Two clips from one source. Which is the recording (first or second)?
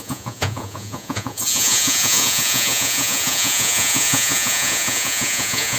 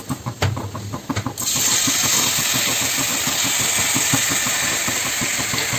second